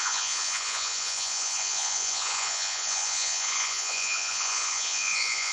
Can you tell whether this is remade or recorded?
remade